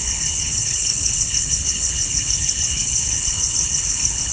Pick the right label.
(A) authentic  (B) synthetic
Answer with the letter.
B